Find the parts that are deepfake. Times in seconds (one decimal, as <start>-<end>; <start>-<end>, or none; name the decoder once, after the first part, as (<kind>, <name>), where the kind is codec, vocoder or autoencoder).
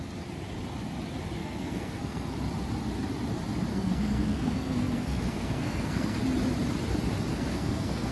1.4-2.3 (codec, SNAC); 3.7-6.2; 7.3-8.1